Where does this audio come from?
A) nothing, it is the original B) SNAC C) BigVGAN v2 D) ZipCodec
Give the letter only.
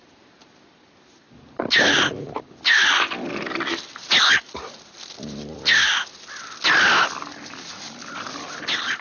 A